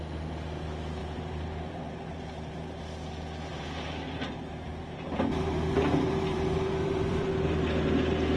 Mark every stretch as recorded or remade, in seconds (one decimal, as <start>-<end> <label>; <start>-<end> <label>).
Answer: 0.0-1.0 recorded; 1.0-2.8 remade; 2.8-3.5 recorded; 3.5-7.3 remade; 7.3-8.4 recorded